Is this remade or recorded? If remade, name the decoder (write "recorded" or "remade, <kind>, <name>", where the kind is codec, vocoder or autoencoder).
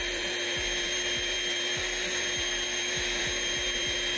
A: remade, vocoder, BigVGAN v2